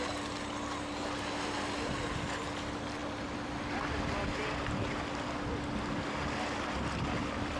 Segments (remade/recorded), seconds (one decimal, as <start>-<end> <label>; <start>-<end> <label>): 0.0-7.6 recorded